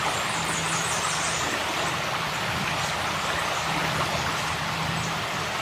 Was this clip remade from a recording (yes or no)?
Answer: no